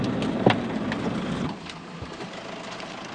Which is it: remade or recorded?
recorded